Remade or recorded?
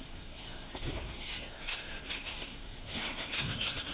remade